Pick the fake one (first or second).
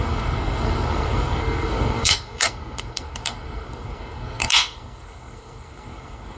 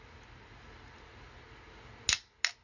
first